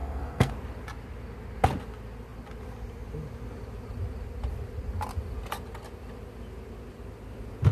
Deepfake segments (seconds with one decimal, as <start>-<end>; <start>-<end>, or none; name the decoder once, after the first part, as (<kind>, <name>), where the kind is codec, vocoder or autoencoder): 0.0-0.5 (codec, SNAC)